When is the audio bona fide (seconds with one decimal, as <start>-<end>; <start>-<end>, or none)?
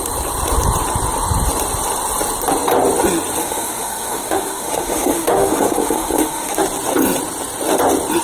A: 0.0-3.4; 6.6-8.2